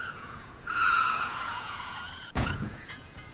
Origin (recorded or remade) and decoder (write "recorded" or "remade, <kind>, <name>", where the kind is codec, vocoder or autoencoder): remade, vocoder, Vocos